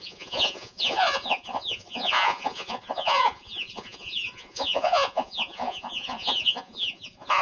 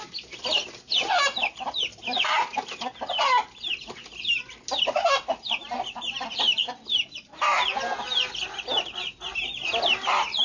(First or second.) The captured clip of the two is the second